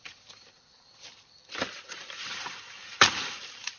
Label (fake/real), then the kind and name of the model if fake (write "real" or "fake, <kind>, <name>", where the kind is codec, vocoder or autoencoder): fake, vocoder, BigVGAN v2